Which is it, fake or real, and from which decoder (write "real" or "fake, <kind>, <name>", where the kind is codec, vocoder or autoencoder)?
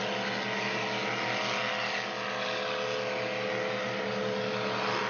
real